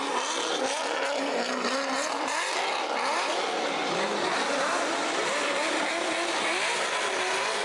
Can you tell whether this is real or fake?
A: real